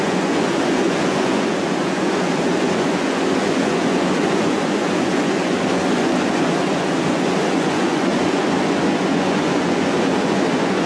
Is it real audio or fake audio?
fake